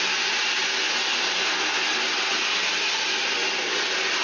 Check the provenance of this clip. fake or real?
real